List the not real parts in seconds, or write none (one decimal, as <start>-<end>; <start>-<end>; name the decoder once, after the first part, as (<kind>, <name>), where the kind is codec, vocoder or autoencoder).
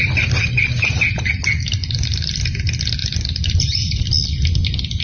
1.8-2.4 (vocoder, BigVGAN v2); 3.0-4.0